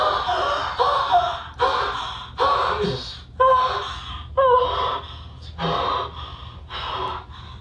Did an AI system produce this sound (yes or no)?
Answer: no